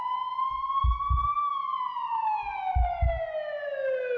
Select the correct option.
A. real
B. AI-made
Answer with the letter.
A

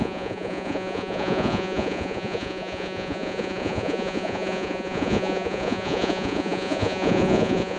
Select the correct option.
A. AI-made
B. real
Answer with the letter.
A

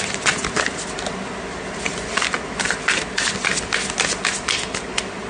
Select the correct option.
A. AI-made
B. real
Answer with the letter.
B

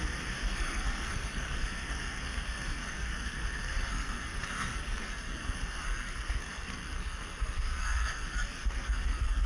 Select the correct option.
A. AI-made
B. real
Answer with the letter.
A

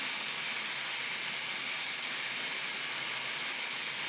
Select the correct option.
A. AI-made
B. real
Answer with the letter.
B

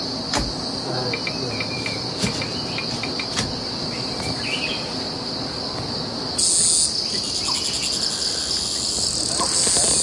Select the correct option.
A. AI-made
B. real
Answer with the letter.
B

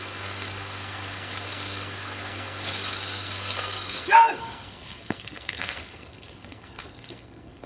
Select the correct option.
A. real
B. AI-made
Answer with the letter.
B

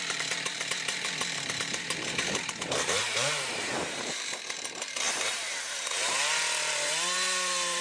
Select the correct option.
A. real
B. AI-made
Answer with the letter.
B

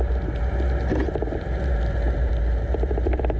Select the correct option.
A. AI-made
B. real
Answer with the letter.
B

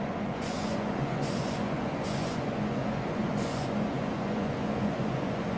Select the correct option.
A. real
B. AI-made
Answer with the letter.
B